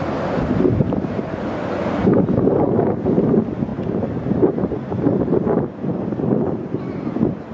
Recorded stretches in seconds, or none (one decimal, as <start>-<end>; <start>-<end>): 0.0-0.7; 1.8-3.7; 5.0-7.5